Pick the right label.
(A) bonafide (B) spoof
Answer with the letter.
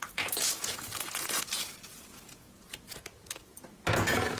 B